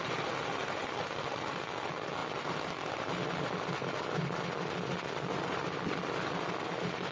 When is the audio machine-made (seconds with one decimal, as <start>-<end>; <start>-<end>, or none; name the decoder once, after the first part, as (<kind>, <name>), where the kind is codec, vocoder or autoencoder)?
none